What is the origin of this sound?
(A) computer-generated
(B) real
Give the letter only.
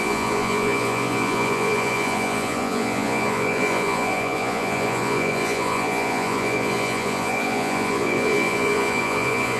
A